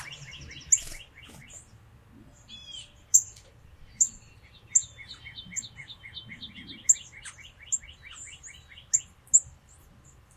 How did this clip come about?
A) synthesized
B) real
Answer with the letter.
B